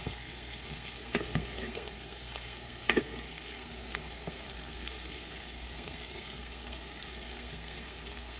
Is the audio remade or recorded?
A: remade